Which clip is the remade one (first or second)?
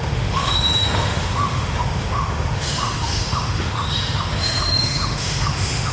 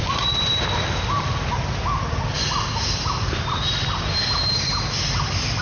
first